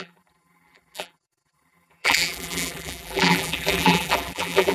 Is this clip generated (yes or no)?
yes